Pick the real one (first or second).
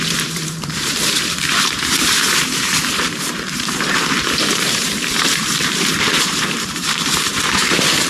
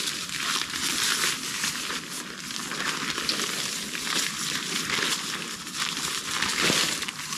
second